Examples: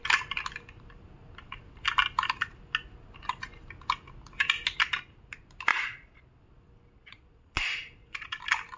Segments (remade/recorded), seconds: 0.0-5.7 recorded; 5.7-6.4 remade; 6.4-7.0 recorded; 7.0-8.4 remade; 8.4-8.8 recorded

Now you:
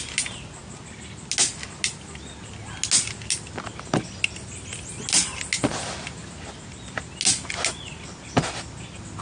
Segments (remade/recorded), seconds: 0.0-9.2 recorded

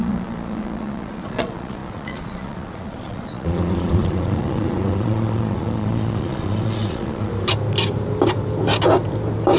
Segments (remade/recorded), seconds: 0.0-7.3 remade; 7.3-9.6 recorded

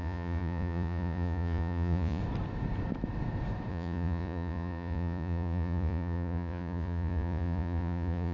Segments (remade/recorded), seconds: 0.0-2.2 remade; 2.2-3.7 recorded; 3.7-8.3 remade

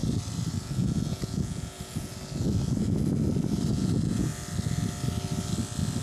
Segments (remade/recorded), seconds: 0.0-0.6 recorded; 0.6-2.1 remade; 2.1-3.7 recorded; 3.7-4.3 remade; 4.3-6.0 recorded

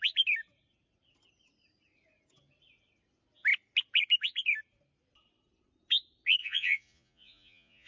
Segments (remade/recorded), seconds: 0.0-6.4 recorded; 6.4-7.9 remade

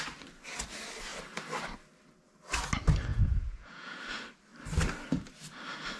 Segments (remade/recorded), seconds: 0.0-3.1 recorded; 3.1-4.0 remade; 4.0-6.0 recorded